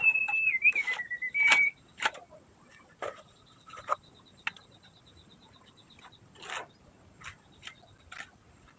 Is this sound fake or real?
real